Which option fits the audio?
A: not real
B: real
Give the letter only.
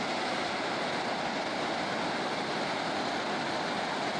B